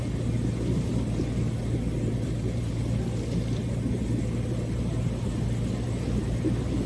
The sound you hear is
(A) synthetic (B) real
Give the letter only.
B